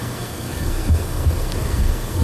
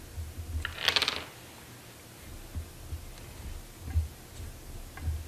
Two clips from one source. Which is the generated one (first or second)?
first